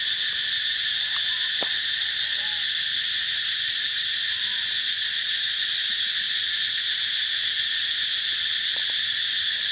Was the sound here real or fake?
real